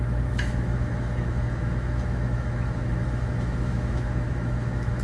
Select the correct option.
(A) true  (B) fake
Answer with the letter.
B